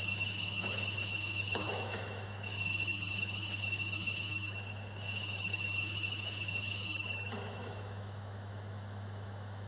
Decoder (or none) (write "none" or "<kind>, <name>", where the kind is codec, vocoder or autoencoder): autoencoder, DAC-VAE